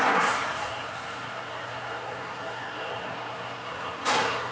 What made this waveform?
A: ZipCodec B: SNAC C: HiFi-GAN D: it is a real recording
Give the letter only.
B